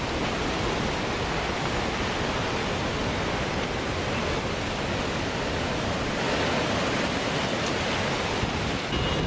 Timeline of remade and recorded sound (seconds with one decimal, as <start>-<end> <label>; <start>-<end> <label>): 0.0-9.3 recorded